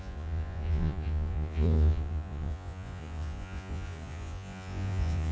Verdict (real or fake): fake